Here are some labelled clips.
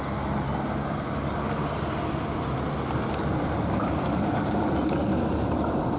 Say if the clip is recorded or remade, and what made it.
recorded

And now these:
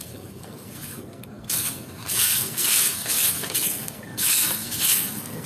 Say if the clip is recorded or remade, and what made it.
remade, codec, SNAC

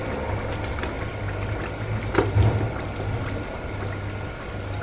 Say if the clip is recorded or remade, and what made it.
recorded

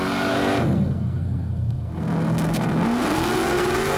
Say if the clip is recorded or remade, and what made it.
remade, codec, SNAC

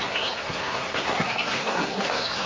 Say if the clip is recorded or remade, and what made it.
remade, codec, SNAC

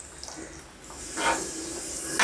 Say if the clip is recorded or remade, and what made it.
recorded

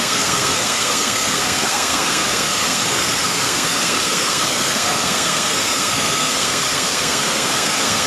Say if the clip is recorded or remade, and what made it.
remade, codec, SNAC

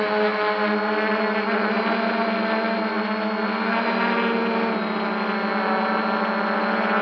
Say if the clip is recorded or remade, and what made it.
recorded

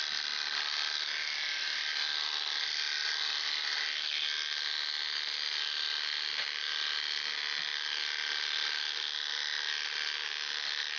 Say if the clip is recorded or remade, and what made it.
recorded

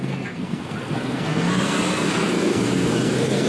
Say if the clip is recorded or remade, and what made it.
remade, codec, SNAC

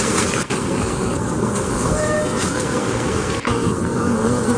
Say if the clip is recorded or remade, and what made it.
remade, codec, SNAC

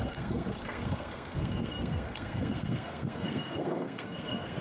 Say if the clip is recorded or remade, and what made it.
remade, codec, SNAC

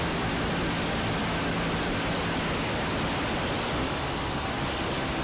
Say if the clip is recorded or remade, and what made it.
recorded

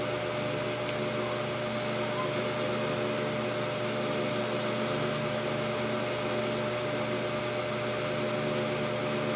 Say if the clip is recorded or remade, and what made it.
recorded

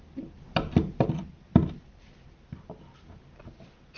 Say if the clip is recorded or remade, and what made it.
recorded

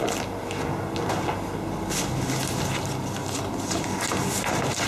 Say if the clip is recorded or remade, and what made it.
recorded